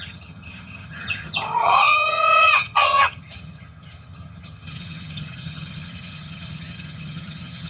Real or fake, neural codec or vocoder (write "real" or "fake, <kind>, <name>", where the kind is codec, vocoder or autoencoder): fake, vocoder, HiFi-GAN